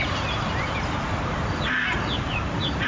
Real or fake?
real